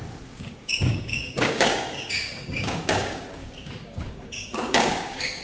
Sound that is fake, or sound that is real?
fake